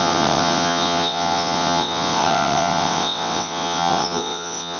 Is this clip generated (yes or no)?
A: yes